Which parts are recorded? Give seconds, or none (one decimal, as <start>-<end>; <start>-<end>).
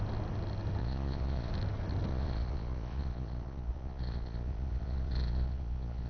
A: 0.0-0.8; 1.5-2.1